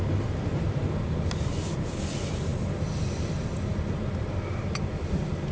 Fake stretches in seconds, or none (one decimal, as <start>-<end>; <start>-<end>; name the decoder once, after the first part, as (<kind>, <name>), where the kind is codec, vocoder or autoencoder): none